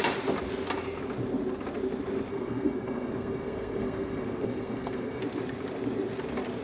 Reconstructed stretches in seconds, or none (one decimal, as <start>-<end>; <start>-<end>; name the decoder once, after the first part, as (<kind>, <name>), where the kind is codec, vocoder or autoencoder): 2.3-5.2 (codec, SNAC)